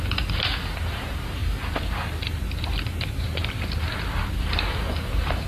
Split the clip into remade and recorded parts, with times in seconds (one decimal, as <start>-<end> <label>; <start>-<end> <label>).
0.0-1.4 remade; 1.4-2.6 recorded; 2.6-3.4 remade; 3.4-4.2 recorded; 4.2-5.5 remade